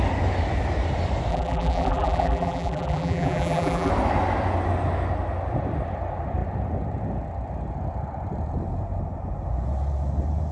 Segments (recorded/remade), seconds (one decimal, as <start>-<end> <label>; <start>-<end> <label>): 0.0-1.3 recorded; 1.3-3.9 remade; 3.9-10.5 recorded